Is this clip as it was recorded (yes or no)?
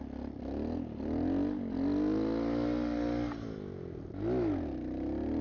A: yes